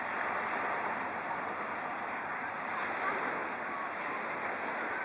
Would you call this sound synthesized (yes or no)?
no